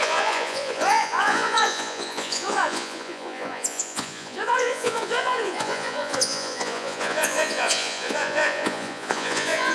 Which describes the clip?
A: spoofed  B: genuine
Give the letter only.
A